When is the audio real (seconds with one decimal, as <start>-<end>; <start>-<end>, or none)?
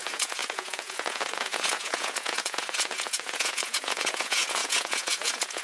none